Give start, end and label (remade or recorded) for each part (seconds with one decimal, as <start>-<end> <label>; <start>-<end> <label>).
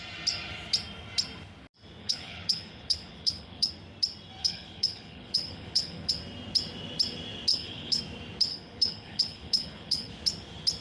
0.0-2.0 recorded; 2.0-3.7 remade; 3.7-4.4 recorded; 4.4-6.1 remade; 6.1-7.5 recorded; 7.5-8.0 remade; 8.0-8.5 recorded; 8.5-10.1 remade; 10.1-10.8 recorded